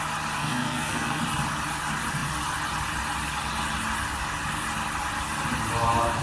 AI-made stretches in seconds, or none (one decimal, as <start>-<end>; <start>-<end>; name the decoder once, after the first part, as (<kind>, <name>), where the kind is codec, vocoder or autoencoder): 0.4-1.2 (codec, SNAC)